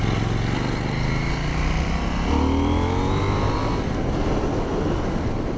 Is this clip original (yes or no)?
yes